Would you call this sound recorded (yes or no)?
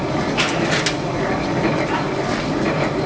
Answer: yes